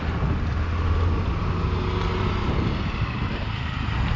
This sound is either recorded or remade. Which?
recorded